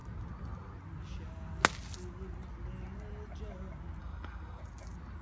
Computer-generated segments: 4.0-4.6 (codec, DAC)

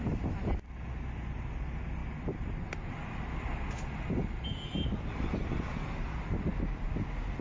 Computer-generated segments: none

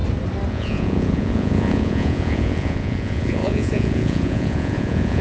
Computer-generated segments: 0.5-5.2 (vocoder, Vocos)